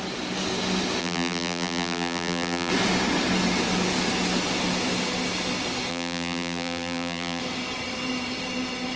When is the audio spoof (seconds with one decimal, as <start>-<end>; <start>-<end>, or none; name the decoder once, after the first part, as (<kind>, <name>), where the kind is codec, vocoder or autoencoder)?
1.0-2.7 (vocoder, BigVGAN v2); 5.9-7.4